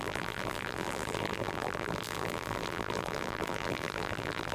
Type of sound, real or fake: fake